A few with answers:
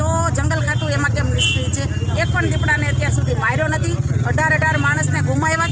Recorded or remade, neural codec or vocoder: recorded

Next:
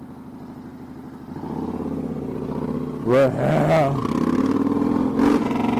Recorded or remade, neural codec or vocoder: recorded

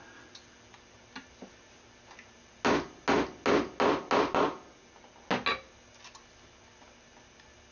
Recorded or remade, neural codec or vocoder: recorded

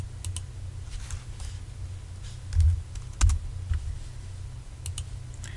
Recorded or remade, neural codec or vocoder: recorded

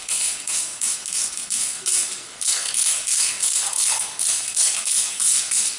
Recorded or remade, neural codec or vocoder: remade, codec, SNAC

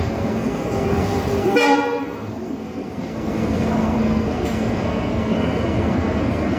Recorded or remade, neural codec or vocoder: remade, codec, SNAC